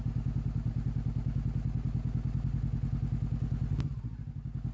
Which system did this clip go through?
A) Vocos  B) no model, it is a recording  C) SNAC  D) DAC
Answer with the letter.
B